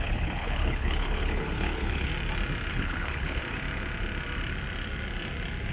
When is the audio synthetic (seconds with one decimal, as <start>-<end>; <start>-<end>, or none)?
0.0-2.1; 2.7-3.4